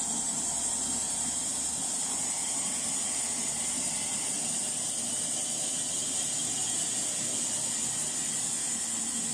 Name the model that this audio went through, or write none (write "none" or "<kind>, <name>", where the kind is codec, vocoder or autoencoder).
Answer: none